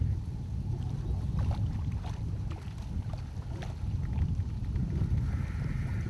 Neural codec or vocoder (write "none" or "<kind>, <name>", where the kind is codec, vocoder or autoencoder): none